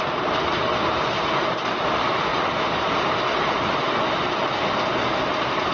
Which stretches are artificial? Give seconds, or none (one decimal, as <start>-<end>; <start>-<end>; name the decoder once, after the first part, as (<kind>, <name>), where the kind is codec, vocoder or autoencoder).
0.7-1.9 (vocoder, BigVGAN v2); 2.3-4.5

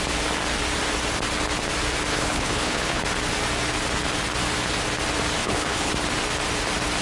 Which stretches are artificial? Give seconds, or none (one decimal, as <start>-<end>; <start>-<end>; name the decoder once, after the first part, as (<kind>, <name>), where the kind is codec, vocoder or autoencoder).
2.1-3.0 (codec, HILCodec); 5.4-5.9

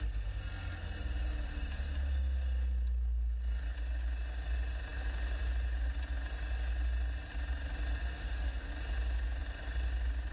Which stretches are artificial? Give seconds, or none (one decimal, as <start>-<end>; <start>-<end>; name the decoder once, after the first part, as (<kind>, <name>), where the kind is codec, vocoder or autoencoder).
8.0-8.7 (autoencoder, DAC-VAE)

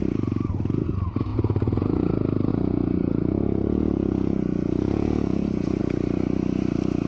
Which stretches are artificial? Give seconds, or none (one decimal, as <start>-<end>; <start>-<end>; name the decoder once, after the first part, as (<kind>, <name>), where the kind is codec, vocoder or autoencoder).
1.3-2.1 (vocoder, Vocos); 2.5-5.8